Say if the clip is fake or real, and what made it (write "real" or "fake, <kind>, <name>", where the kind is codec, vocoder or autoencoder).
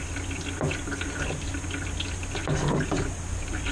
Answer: real